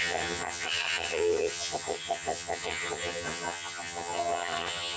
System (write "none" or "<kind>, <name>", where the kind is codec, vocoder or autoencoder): vocoder, HiFi-GAN